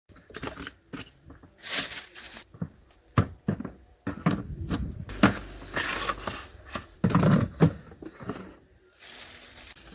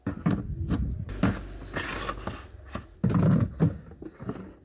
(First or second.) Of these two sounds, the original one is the second